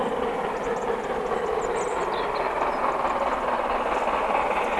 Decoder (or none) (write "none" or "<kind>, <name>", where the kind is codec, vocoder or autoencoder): none